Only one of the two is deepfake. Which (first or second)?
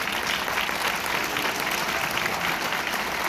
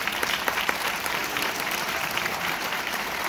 second